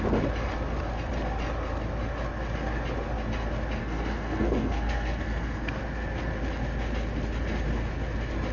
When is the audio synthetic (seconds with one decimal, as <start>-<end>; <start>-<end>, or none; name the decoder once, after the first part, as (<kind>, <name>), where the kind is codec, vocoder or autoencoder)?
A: 3.8-5.8 (codec, SNAC)